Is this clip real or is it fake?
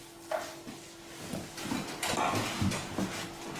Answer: real